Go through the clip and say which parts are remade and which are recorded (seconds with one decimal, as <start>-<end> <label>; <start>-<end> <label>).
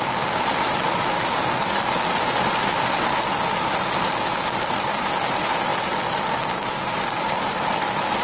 0.0-8.2 recorded